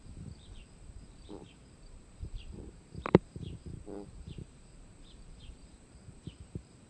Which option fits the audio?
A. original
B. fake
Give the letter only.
B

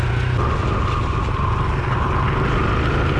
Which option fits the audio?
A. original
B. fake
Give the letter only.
A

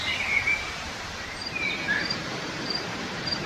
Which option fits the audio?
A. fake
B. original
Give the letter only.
A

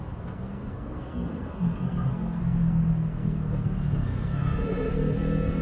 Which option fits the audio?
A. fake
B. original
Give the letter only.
A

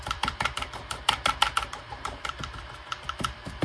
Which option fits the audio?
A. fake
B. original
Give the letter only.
A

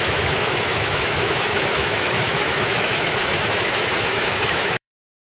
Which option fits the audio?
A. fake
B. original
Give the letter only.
A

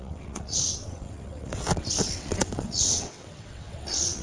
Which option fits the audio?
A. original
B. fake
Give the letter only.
B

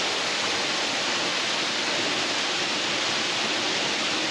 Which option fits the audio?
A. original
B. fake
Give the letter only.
A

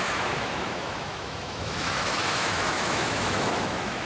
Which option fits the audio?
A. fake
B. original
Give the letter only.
A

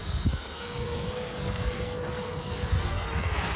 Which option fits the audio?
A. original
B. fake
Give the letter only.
B